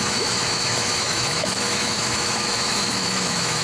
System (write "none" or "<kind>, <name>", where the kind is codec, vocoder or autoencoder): autoencoder, DAC-VAE